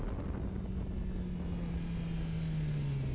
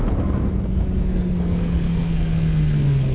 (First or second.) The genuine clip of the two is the first